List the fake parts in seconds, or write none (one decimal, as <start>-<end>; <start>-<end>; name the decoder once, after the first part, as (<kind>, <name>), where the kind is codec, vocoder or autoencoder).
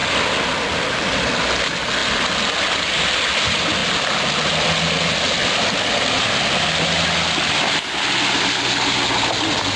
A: none